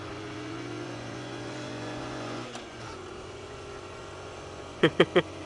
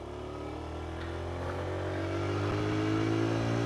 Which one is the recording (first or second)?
second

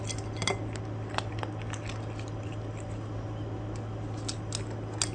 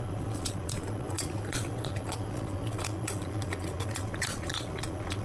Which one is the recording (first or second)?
first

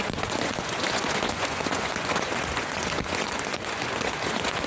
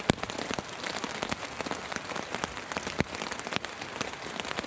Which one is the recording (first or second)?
second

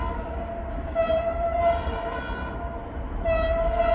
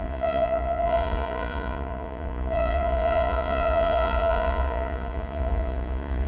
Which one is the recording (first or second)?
first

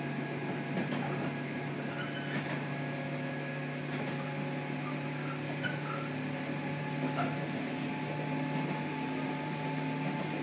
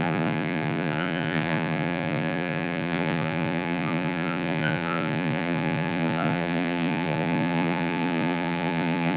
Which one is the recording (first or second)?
first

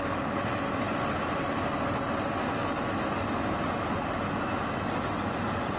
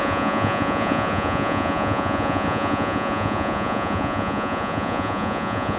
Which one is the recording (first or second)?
first